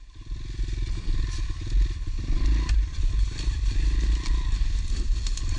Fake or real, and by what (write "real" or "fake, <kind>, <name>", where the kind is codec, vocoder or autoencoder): real